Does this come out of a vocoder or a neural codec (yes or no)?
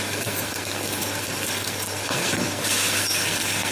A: yes